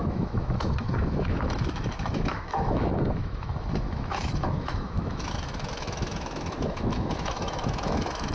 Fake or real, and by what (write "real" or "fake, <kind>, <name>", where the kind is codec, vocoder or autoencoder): fake, autoencoder, DAC-VAE